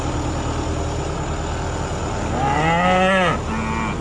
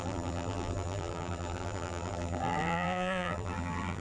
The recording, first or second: first